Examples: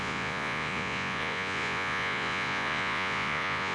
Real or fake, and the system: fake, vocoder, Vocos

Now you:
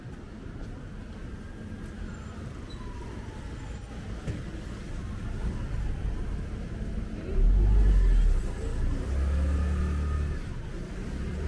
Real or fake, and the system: real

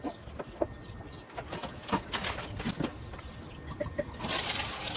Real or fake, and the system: real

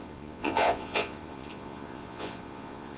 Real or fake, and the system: fake, vocoder, Vocos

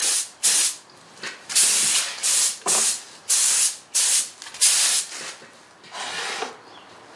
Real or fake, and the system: real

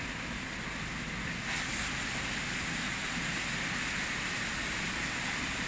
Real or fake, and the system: real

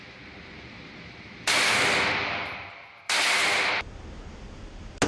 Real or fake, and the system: real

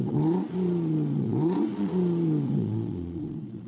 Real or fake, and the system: fake, vocoder, Vocos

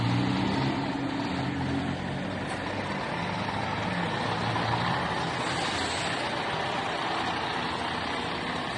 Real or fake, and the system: real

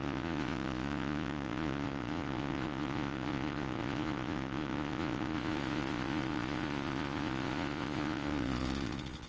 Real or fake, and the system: fake, vocoder, Vocos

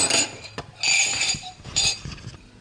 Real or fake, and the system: real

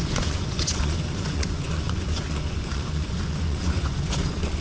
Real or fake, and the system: fake, vocoder, Vocos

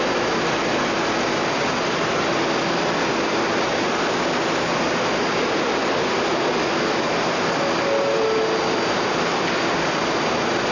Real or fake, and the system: real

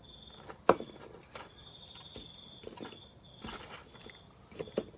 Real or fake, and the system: real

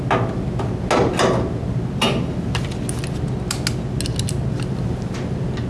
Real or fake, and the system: real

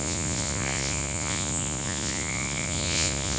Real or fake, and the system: fake, vocoder, Vocos